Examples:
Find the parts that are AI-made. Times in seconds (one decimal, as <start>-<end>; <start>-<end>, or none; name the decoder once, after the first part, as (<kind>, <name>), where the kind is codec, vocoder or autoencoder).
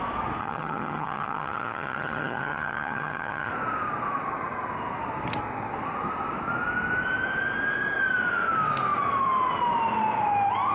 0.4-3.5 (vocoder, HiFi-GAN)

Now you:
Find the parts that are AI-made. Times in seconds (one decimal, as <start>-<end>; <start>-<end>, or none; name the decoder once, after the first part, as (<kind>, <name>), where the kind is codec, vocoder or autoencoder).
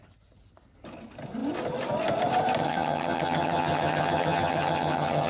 2.6-5.3 (vocoder, HiFi-GAN)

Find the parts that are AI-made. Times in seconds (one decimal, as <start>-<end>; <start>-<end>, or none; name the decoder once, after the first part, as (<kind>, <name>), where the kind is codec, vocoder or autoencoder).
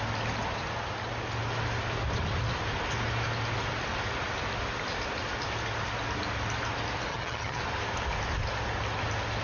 7.1-7.6 (vocoder, HiFi-GAN)